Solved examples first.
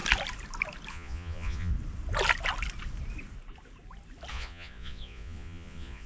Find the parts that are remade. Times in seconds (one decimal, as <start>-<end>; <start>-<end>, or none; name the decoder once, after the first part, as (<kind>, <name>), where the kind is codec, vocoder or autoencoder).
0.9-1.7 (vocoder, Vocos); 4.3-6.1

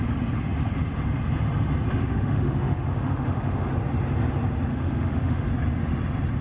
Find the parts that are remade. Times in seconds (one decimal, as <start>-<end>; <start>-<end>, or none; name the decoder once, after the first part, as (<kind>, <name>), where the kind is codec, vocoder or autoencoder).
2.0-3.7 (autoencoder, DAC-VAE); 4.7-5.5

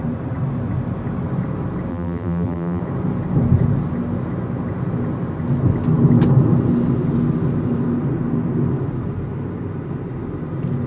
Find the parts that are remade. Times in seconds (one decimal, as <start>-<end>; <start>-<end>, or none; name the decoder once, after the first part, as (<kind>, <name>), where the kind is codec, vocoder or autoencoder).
1.9-2.8 (vocoder, BigVGAN v2)

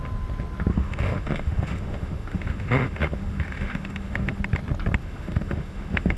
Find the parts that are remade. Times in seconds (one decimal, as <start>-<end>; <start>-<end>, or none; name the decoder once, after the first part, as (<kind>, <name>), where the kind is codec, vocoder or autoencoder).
0.7-4.4 (autoencoder, DAC-VAE); 5.0-6.2

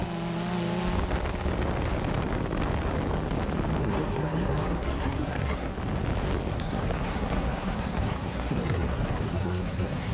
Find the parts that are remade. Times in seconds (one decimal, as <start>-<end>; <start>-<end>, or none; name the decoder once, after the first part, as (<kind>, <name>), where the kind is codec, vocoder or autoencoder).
3.8-5.7 (codec, SNAC); 6.5-10.1

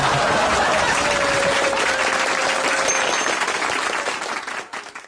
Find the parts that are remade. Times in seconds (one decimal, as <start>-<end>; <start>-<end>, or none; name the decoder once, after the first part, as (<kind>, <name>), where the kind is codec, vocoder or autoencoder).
none

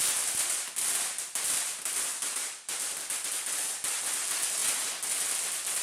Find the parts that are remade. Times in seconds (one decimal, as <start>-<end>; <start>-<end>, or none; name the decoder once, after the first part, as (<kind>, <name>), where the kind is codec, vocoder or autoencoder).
2.1-3.3 (vocoder, BigVGAN v2)